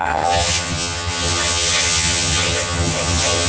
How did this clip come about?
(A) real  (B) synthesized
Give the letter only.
B